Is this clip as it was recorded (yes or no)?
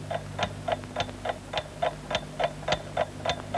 yes